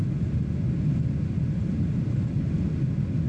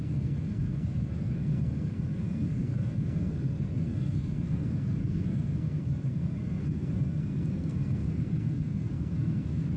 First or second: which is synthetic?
second